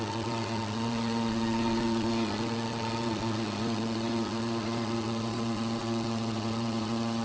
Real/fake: fake